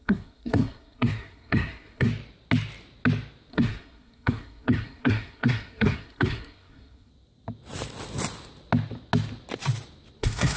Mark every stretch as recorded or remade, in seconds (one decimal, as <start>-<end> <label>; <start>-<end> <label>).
0.0-2.1 remade; 2.1-3.5 recorded; 3.5-7.1 remade; 7.1-10.2 recorded; 10.2-10.6 remade